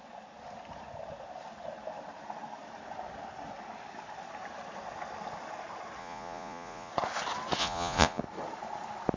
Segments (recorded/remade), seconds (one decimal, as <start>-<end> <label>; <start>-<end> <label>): 0.0-6.0 recorded; 6.0-6.9 remade; 6.9-7.6 recorded; 7.6-8.2 remade; 8.2-9.2 recorded